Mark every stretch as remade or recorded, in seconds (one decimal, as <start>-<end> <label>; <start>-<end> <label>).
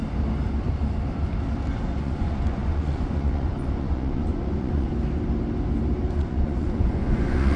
0.0-2.0 recorded; 2.0-4.9 remade; 4.9-6.1 recorded; 6.1-7.6 remade